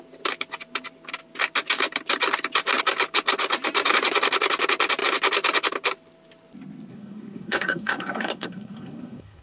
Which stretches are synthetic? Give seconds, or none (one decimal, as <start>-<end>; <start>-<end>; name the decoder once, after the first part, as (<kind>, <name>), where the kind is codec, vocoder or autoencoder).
6.9-9.4 (codec, SNAC)